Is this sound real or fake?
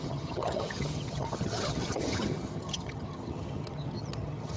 fake